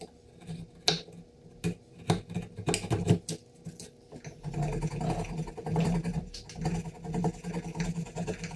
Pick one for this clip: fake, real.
real